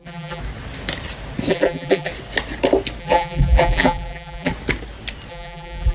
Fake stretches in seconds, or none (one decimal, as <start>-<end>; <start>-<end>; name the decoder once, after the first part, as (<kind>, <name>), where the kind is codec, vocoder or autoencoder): 0.0-0.4 (vocoder, BigVGAN v2); 1.5-2.1; 3.0-4.5; 5.3-5.9